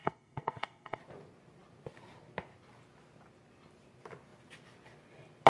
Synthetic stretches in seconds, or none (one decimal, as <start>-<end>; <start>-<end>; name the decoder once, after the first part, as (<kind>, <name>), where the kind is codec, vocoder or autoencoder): 0.0-1.0 (codec, SNAC)